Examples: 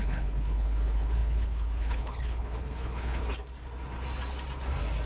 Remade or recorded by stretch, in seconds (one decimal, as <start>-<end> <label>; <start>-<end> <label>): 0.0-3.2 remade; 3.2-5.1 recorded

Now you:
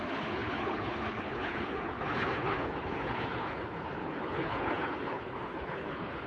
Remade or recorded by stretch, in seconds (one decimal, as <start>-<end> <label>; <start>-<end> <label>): 0.0-6.3 remade

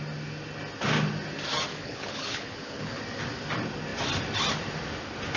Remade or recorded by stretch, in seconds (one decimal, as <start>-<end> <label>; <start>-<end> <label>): 0.0-1.7 recorded; 1.7-3.0 remade; 3.0-5.4 recorded